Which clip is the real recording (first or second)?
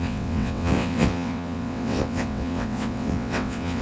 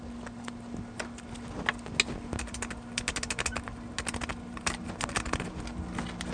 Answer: second